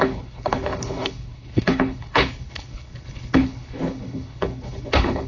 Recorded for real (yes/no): no